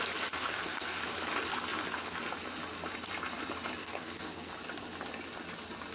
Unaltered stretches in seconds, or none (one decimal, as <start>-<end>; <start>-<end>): 0.0-0.4; 1.0-3.8; 4.5-5.9

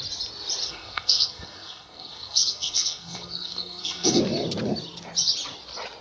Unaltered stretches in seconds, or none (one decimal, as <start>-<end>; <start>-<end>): 0.0-0.6; 4.2-6.0

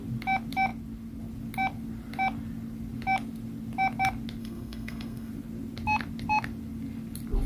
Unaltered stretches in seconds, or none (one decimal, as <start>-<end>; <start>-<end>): 0.0-4.4; 5.3-7.5

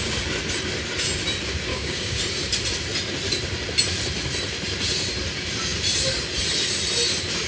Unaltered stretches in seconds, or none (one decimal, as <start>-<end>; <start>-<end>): 0.0-1.7; 2.2-7.5